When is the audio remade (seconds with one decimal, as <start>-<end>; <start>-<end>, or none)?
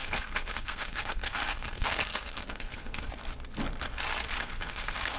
0.0-3.1; 4.4-5.2